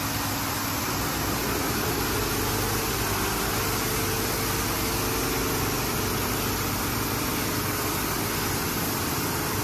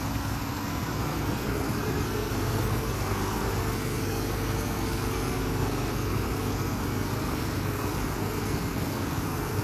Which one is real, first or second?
first